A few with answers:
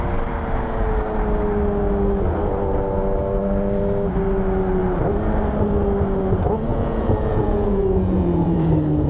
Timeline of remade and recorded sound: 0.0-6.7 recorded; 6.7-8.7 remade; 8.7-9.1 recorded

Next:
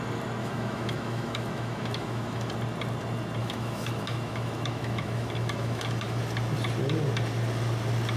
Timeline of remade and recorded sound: 0.0-0.4 recorded; 0.4-2.5 remade; 2.5-3.4 recorded; 3.4-6.2 remade; 6.2-8.2 recorded

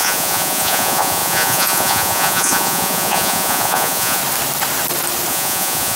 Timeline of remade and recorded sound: 0.0-4.2 remade; 4.2-5.3 recorded; 5.3-6.0 remade

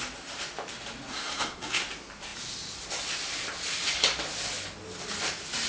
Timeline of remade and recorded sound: 0.0-1.1 recorded; 1.1-1.8 remade; 1.8-5.7 recorded